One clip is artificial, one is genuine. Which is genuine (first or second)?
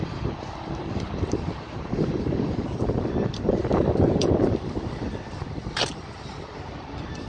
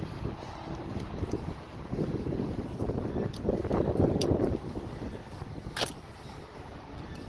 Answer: second